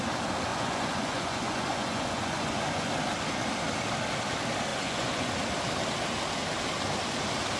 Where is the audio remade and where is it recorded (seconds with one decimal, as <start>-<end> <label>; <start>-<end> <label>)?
0.0-0.5 recorded; 0.5-2.9 remade; 2.9-4.7 recorded; 4.7-5.3 remade; 5.3-7.6 recorded